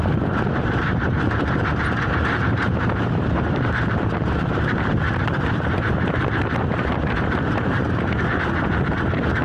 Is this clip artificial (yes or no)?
yes